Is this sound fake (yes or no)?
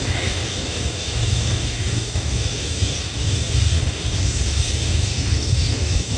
yes